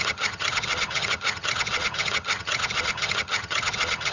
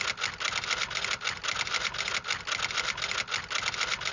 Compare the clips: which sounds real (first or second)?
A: second